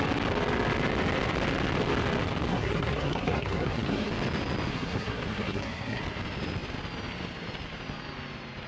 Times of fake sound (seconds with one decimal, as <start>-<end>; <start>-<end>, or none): 2.5-4.1; 4.7-6.0